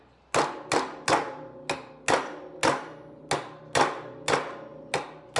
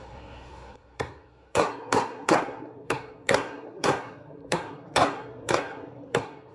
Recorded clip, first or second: first